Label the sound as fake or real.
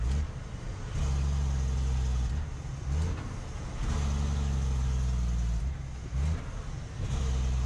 real